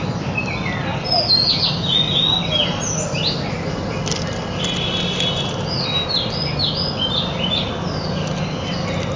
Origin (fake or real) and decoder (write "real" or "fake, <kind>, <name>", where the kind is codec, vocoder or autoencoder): real